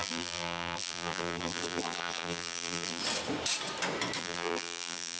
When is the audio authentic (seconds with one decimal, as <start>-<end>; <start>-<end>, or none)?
3.0-4.2